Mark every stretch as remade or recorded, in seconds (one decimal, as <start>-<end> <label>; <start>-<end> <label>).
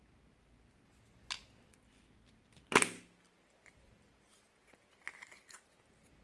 0.0-6.2 recorded